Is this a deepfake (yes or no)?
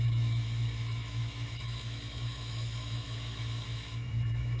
yes